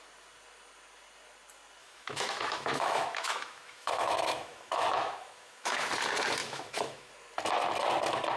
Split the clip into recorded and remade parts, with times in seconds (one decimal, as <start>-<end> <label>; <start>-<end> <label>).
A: 0.0-1.8 recorded; 1.8-5.9 remade; 5.9-6.4 recorded; 6.4-7.1 remade; 7.1-8.4 recorded